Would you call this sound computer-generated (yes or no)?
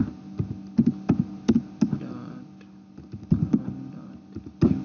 no